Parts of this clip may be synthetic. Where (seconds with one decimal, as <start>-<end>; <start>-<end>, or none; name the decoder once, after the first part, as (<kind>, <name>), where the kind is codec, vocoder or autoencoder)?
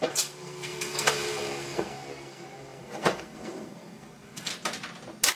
0.0-4.5 (codec, SNAC)